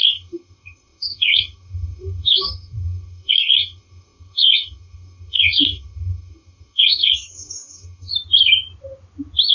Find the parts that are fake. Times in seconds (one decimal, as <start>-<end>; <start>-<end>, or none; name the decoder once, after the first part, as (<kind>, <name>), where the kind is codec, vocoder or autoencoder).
0.0-8.1 (codec, DAC)